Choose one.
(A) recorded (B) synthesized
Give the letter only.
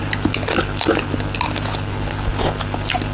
A